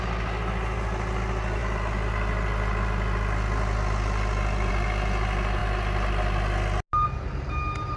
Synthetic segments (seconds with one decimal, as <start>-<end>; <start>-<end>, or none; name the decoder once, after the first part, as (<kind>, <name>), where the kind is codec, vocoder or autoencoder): none